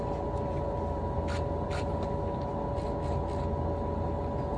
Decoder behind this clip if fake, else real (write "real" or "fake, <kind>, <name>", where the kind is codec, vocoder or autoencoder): real